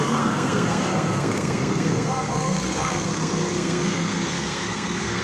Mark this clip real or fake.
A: fake